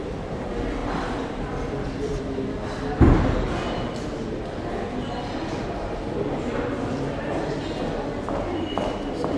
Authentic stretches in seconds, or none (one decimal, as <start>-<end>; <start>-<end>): 0.0-0.8; 2.3-9.4